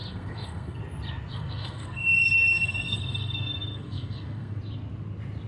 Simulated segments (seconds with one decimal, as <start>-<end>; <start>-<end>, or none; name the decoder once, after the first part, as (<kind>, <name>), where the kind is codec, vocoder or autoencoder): 0.0-0.8 (codec, SNAC); 1.3-4.6